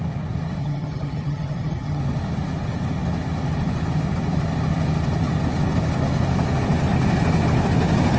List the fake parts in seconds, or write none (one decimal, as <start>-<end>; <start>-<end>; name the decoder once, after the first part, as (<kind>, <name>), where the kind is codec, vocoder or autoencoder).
0.6-2.0 (vocoder, HiFi-GAN)